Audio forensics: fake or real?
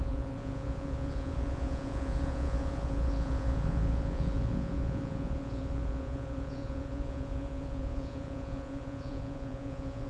fake